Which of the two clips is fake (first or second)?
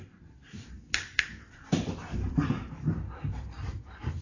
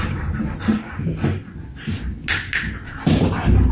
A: first